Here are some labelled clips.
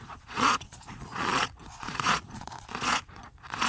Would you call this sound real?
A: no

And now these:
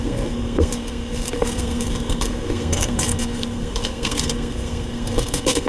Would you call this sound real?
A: no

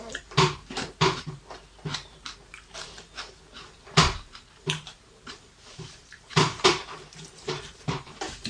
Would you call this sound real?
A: no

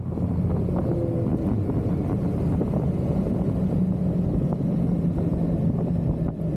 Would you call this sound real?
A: yes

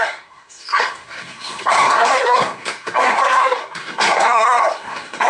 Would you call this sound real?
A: no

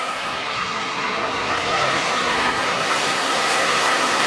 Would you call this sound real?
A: no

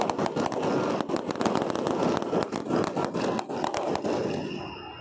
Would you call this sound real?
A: yes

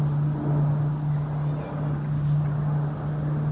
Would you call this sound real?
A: yes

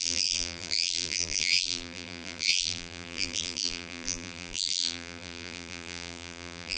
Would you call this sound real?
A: no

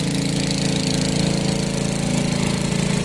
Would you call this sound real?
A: yes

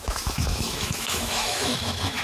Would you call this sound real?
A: no